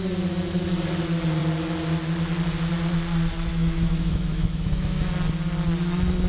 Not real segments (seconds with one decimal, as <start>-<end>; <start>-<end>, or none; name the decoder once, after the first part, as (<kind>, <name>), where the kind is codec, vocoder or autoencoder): 3.5-5.1 (autoencoder, DAC-VAE)